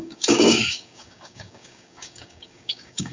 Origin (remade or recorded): remade